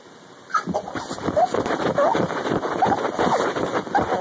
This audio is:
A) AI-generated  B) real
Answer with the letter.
B